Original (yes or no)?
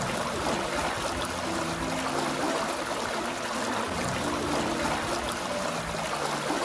yes